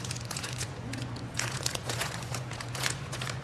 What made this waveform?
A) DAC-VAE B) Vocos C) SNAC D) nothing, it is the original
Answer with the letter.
B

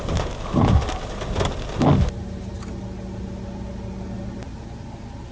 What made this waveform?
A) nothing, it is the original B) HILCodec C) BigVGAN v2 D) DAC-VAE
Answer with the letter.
A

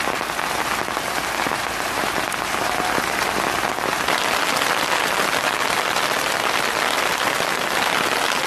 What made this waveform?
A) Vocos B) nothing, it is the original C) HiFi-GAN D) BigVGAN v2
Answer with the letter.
B